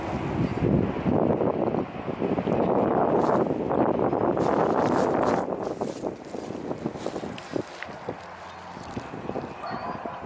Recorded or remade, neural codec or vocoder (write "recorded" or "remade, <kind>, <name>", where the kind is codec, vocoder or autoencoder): recorded